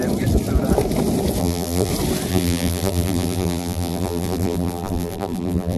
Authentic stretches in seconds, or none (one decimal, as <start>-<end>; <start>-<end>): 0.0-1.4; 1.9-2.3